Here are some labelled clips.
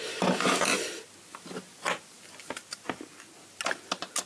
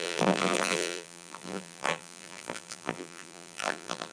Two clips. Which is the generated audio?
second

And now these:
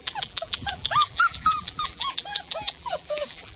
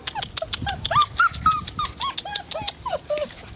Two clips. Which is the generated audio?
first